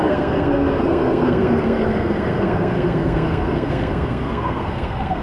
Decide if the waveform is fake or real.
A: fake